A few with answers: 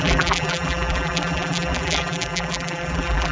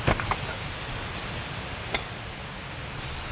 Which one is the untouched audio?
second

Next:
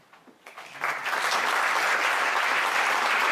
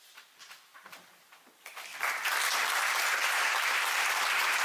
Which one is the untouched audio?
first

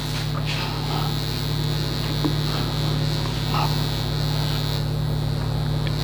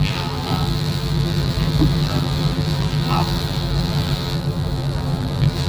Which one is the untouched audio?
first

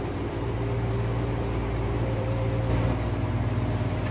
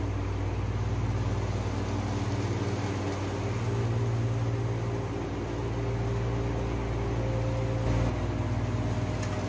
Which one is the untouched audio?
second